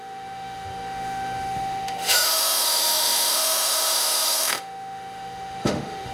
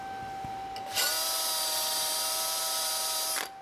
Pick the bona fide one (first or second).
second